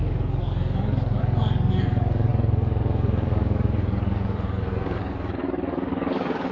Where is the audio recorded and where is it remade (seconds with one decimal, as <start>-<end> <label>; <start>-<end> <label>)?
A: 0.0-6.5 remade